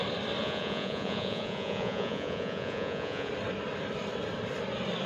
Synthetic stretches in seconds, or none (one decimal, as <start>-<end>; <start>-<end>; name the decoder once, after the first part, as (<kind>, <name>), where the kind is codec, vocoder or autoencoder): 0.4-3.3 (vocoder, Vocos)